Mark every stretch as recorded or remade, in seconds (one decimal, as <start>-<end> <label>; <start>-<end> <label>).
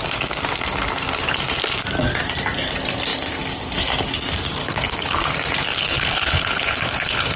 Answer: 0.0-4.6 recorded; 4.6-5.2 remade; 5.2-5.7 recorded; 5.7-7.4 remade